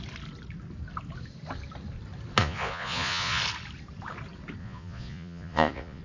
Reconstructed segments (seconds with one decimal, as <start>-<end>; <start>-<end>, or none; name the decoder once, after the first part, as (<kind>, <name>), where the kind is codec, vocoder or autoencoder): 2.4-3.4 (vocoder, Vocos); 4.6-6.0